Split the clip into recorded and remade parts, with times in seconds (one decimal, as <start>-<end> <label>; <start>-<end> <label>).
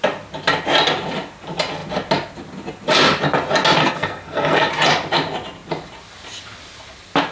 0.0-3.8 recorded; 3.8-4.7 remade; 4.7-7.3 recorded